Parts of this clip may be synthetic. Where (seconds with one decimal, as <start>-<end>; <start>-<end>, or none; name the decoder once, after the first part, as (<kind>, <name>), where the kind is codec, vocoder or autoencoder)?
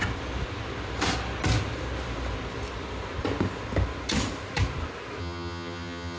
5.2-6.2 (vocoder, HiFi-GAN)